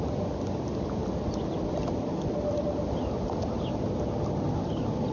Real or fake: real